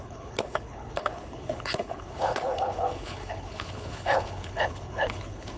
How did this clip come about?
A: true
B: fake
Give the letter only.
B